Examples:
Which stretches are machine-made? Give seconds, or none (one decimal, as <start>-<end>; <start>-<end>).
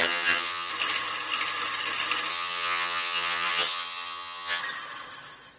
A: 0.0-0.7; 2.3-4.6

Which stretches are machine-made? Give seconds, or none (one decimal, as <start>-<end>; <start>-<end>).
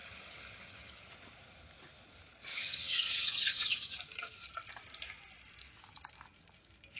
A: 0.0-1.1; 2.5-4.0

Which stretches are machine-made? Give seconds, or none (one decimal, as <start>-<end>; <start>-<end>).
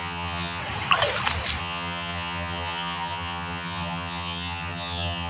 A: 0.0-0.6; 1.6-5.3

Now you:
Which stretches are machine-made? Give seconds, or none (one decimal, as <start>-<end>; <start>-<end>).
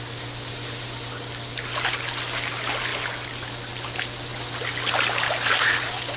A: none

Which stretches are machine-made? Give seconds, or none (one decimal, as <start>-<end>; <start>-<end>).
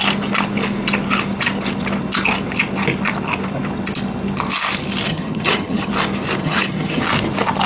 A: 5.1-5.9; 6.4-7.0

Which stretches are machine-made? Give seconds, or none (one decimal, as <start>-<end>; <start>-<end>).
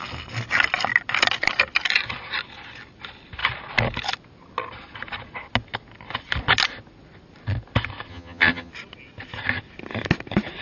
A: 8.1-8.7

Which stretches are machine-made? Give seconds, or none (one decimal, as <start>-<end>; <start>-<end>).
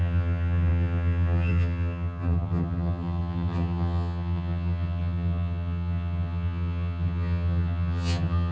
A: 0.0-8.5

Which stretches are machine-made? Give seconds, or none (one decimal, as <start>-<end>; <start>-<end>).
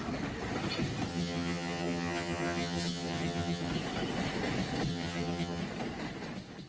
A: 1.1-3.7; 4.9-5.6